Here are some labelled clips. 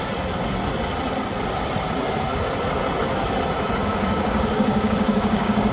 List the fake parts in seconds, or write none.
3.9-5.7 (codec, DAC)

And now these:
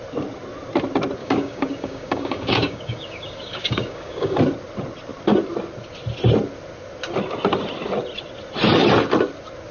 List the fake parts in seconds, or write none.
1.2-4.4 (codec, DAC)

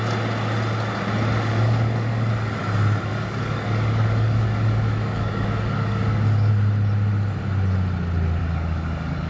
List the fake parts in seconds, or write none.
1.5-2.3 (codec, DAC); 3.1-6.5; 8.4-9.3